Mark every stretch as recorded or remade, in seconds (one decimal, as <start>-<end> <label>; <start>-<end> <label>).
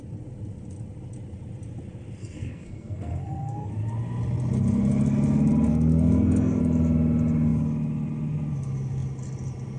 0.0-2.2 recorded; 2.2-3.7 remade; 3.7-5.7 recorded; 5.7-6.6 remade; 6.6-9.8 recorded